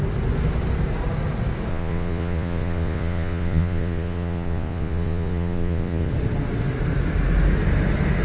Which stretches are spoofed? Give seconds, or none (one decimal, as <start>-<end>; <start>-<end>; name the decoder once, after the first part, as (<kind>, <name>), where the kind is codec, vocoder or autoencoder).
1.7-6.1 (vocoder, Vocos)